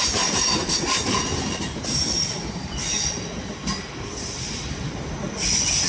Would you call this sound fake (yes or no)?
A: yes